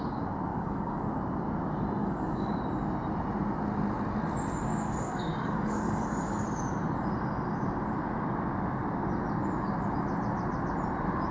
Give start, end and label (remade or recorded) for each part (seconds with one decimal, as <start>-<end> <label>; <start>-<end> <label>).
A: 0.0-0.5 recorded; 0.5-1.1 remade; 1.1-2.0 recorded; 2.0-2.6 remade; 2.6-4.7 recorded; 4.7-6.4 remade; 6.4-11.3 recorded